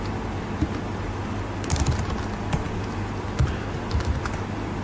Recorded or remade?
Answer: recorded